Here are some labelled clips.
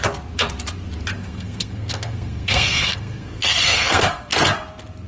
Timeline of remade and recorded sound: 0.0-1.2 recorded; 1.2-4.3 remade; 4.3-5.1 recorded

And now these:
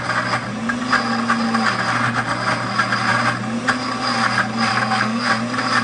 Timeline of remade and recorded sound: 0.0-4.7 recorded; 4.7-5.3 remade; 5.3-5.8 recorded

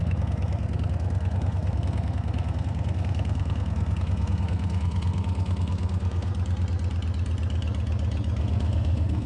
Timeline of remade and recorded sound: 0.0-6.3 remade; 6.3-8.4 recorded; 8.4-9.3 remade

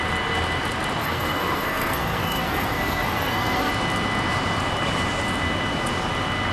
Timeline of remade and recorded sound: 0.0-1.0 recorded; 1.0-3.7 remade; 3.7-6.5 recorded

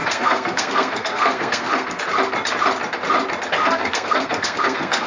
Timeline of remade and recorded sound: 0.0-2.0 remade; 2.0-3.6 recorded; 3.6-5.1 remade